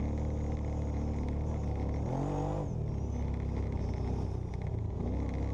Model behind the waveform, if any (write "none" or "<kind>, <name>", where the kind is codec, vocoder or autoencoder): none